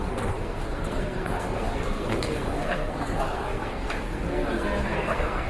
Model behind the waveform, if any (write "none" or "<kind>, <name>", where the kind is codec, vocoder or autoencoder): codec, SNAC